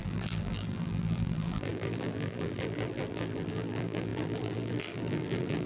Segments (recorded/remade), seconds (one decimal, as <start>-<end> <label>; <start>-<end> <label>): 0.0-5.7 remade